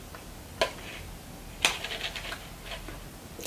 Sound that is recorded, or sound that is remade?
recorded